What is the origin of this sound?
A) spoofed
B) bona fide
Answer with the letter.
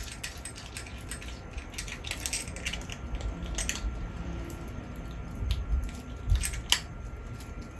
B